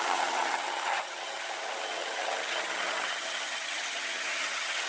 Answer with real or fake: fake